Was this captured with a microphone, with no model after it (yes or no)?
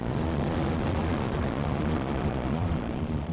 no